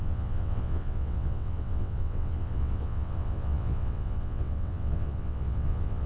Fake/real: fake